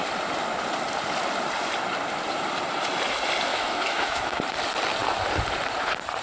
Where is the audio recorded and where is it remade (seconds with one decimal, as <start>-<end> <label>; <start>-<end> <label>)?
0.0-3.5 recorded; 3.5-4.4 remade; 4.4-6.2 recorded